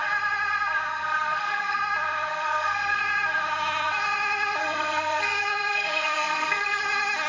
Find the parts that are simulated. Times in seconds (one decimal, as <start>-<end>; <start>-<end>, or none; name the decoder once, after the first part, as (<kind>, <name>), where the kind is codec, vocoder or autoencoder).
0.9-1.8 (codec, SNAC); 2.3-3.0; 4.6-6.8